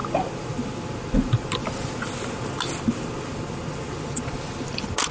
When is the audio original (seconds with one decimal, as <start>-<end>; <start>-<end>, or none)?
0.0-5.1